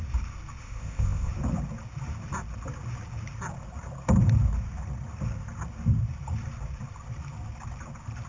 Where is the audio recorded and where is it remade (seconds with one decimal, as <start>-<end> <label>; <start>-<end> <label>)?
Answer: 0.0-0.6 recorded; 0.6-1.3 remade; 1.3-8.3 recorded